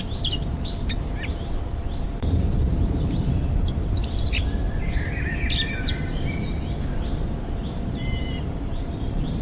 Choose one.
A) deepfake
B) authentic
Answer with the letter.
A